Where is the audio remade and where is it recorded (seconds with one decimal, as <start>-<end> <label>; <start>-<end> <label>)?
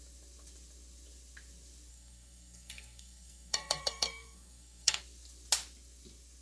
0.0-1.9 recorded; 1.9-5.0 remade; 5.0-6.4 recorded